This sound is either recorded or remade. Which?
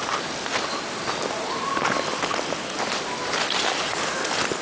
recorded